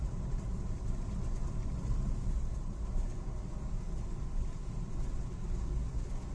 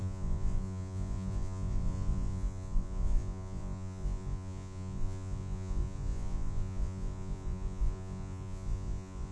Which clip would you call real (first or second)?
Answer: first